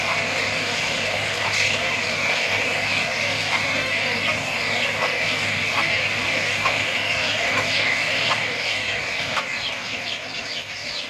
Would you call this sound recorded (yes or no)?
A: no